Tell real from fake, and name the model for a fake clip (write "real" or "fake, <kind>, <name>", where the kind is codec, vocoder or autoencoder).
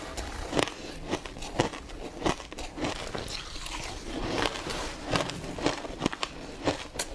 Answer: real